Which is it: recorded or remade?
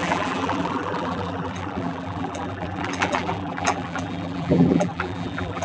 remade